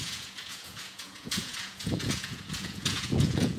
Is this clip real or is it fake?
fake